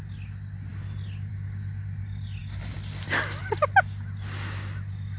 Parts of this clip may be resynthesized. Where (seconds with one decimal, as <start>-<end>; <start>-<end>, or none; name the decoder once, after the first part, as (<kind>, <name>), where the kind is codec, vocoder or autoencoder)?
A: none